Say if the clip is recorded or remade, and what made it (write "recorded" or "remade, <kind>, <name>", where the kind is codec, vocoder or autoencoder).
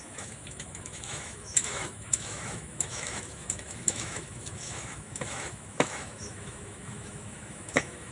remade, autoencoder, DAC-VAE